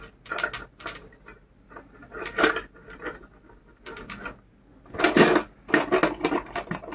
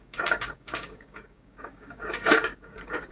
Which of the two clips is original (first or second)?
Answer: first